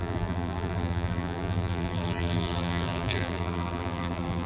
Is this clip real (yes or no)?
no